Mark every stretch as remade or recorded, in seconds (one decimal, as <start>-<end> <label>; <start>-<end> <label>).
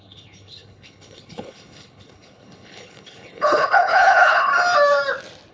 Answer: 0.0-4.5 remade; 4.5-5.5 recorded